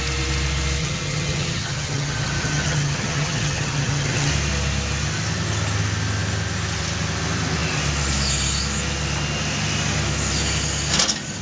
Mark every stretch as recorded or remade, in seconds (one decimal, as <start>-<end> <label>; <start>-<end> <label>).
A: 0.0-0.8 recorded; 0.8-4.3 remade; 4.3-11.4 recorded